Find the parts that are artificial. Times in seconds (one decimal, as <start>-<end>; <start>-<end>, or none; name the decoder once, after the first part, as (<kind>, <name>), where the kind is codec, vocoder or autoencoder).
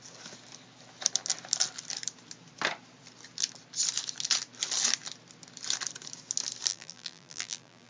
6.7-7.9 (vocoder, BigVGAN v2)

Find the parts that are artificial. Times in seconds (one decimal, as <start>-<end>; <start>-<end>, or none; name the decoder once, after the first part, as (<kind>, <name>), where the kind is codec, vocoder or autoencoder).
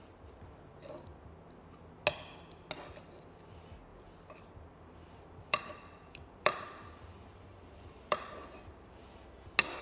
3.9-9.0 (vocoder, BigVGAN v2)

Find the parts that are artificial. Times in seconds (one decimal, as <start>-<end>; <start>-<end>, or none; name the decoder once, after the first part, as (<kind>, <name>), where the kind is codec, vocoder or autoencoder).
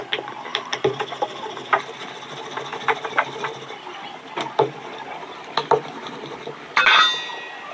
none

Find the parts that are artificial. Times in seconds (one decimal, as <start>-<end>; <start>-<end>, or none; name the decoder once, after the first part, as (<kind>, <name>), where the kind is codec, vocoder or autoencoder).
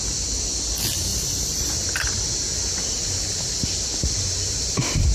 1.1-1.7 (vocoder, BigVGAN v2)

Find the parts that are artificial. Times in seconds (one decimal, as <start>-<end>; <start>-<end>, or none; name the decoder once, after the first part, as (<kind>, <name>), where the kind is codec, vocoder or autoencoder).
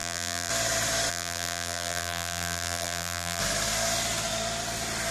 0.0-0.5 (vocoder, BigVGAN v2); 1.1-3.4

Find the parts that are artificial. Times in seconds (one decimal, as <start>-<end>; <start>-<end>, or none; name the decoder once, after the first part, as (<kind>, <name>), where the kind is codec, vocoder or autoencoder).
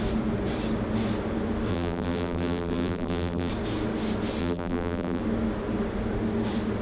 1.7-3.5 (vocoder, BigVGAN v2); 4.4-5.2